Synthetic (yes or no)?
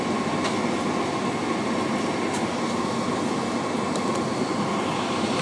no